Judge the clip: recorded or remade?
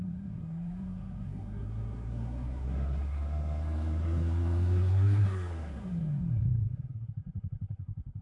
remade